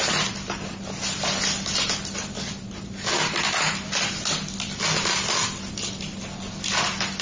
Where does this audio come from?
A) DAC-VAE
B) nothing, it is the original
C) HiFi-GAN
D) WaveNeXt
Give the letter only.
B